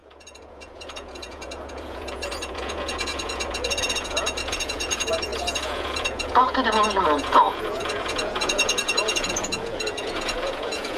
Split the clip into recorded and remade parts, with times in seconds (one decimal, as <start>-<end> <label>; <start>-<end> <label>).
0.0-11.0 remade